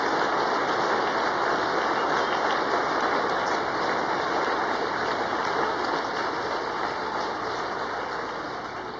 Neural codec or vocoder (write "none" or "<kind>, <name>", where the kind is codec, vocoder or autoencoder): none